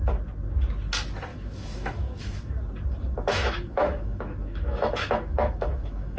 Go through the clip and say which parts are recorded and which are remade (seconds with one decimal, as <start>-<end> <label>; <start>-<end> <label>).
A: 0.0-1.3 recorded; 1.3-2.5 remade; 2.5-3.3 recorded; 3.3-6.2 remade